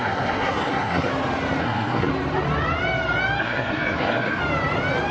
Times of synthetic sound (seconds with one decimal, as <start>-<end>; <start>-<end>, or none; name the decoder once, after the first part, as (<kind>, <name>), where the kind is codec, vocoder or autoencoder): 0.0-1.1 (codec, SNAC); 1.6-2.1; 3.4-4.4